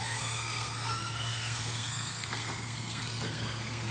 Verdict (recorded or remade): remade